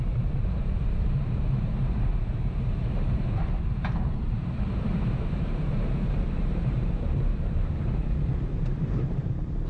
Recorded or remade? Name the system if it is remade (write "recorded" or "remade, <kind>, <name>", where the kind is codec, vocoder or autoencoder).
remade, vocoder, BigVGAN v2